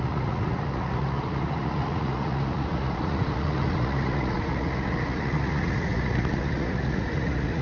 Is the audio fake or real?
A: fake